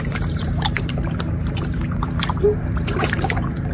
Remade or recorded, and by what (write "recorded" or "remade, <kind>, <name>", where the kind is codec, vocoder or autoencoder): remade, vocoder, BigVGAN v2